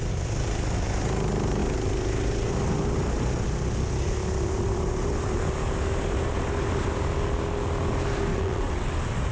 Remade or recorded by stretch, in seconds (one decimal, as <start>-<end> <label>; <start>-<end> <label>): 0.0-8.3 recorded; 8.3-8.9 remade; 8.9-9.3 recorded